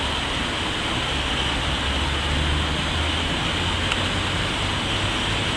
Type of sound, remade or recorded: recorded